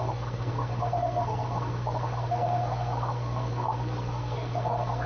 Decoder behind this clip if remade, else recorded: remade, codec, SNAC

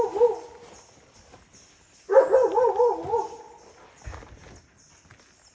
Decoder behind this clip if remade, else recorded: recorded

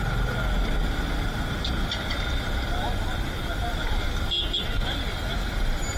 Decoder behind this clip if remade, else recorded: recorded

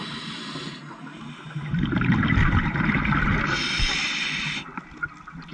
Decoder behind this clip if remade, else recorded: recorded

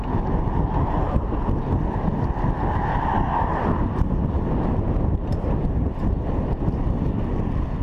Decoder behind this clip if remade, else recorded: recorded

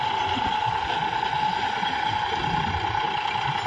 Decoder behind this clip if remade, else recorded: recorded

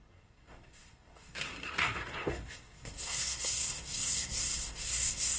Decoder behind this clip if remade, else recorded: remade, codec, SNAC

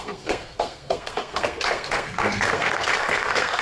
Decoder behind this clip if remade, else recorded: remade, codec, SNAC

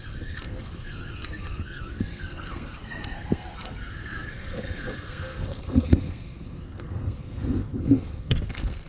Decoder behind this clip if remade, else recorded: remade, codec, SNAC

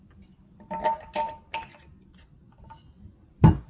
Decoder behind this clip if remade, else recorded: recorded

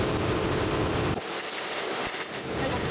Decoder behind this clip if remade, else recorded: recorded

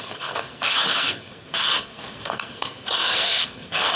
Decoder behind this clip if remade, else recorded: remade, codec, SNAC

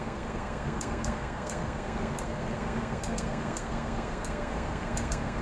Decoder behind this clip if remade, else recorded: remade, codec, SNAC